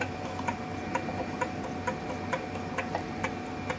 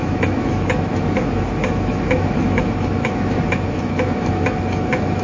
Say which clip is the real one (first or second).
first